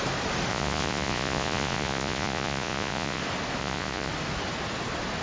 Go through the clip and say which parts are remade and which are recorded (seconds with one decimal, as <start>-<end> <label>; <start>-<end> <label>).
0.0-0.5 recorded; 0.5-3.2 remade; 3.2-3.6 recorded; 3.6-4.1 remade; 4.1-5.2 recorded